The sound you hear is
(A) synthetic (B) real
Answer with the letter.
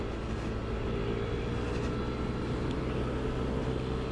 B